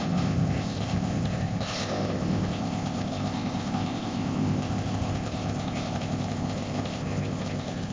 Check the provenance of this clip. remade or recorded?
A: remade